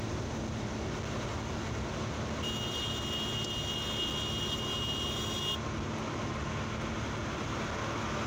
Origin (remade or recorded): recorded